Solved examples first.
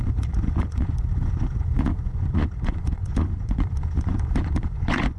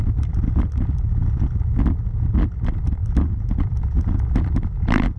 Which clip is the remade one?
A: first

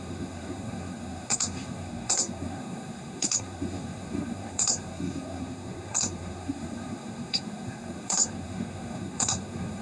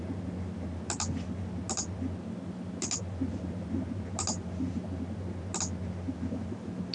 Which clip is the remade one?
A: first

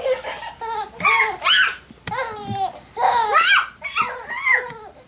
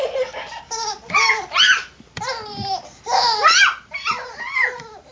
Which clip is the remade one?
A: second